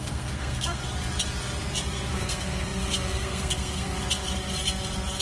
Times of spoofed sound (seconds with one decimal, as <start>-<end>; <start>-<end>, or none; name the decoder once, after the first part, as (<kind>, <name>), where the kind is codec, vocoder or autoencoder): 0.0-0.8 (codec, SNAC); 2.1-4.0